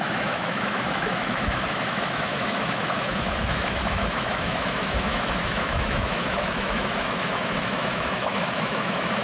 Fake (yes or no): yes